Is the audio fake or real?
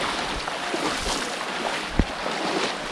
real